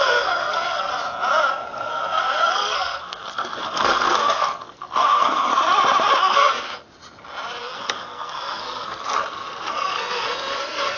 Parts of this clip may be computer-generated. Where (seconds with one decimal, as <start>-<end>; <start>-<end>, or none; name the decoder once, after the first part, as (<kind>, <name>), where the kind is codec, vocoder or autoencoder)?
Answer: 0.0-0.9 (codec, SNAC); 1.5-5.5; 6.2-6.7; 7.6-11.0